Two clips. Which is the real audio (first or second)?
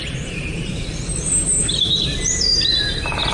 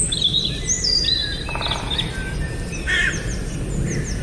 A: second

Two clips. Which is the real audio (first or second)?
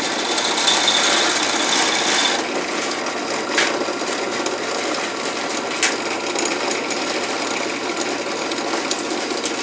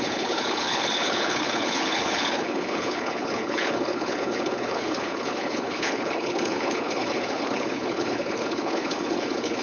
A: first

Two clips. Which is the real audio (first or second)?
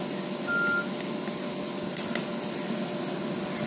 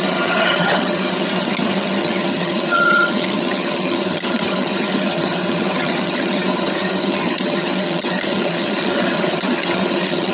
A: first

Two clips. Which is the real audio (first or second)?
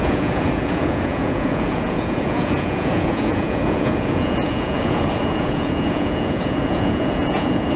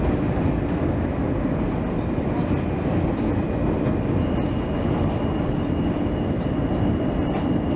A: second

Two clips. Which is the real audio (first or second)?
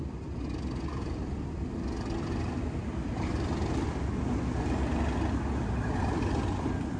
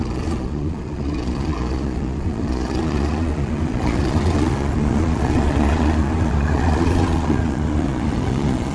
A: first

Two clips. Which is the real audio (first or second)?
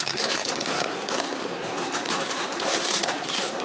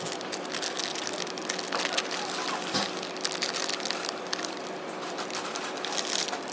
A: second